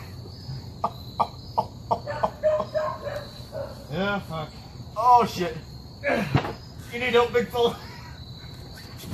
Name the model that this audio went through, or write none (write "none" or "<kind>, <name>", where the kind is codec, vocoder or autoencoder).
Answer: none